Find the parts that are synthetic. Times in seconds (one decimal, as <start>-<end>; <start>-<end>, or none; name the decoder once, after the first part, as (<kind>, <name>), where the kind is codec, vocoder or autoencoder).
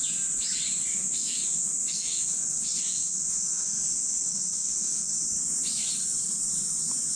0.9-5.2 (codec, SNAC)